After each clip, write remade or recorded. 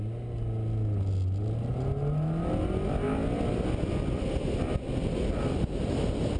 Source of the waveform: recorded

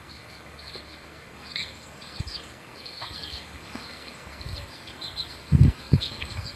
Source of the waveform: remade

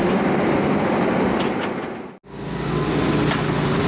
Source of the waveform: recorded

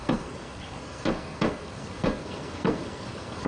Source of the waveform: remade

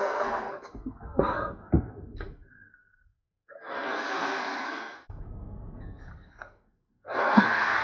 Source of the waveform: remade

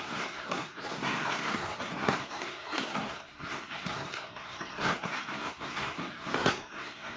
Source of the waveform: remade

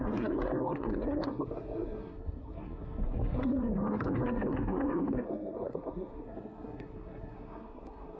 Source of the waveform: remade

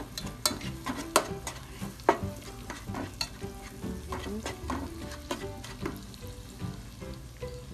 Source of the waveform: recorded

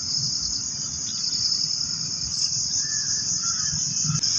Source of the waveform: recorded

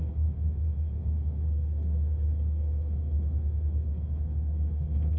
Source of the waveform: remade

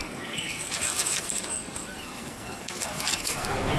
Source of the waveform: remade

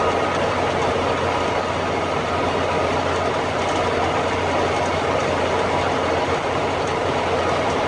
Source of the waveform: recorded